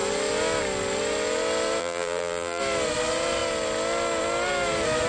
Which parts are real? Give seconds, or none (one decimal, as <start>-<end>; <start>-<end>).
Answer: 0.0-1.8; 2.6-5.1